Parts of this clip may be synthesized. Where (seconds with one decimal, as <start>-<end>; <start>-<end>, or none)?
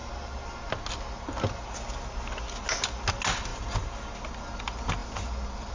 none